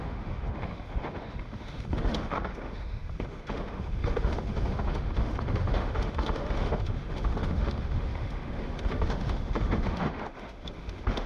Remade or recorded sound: remade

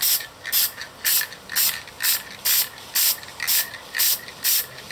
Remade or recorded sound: recorded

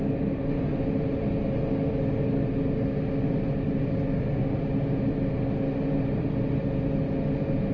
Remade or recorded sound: recorded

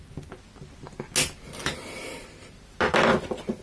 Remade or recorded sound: recorded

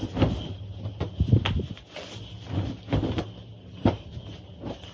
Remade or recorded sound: recorded